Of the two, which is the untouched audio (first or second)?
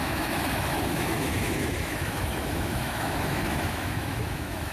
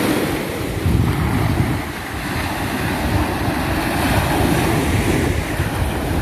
second